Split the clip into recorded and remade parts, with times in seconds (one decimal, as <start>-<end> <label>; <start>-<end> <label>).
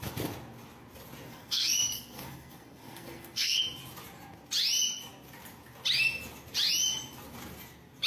0.0-1.3 recorded; 1.3-3.6 remade; 3.6-8.1 recorded